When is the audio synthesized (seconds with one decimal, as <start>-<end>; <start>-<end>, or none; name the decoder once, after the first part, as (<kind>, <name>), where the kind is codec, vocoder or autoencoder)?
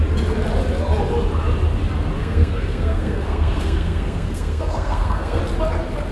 2.2-5.4 (codec, SNAC)